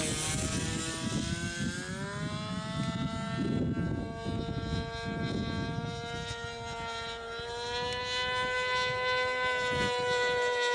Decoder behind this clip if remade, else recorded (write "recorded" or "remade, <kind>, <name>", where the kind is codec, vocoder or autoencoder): recorded